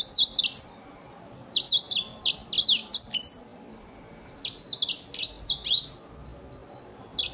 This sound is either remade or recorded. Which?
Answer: recorded